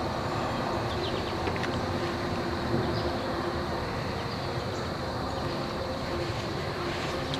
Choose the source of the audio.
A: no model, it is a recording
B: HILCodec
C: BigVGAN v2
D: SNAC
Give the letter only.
C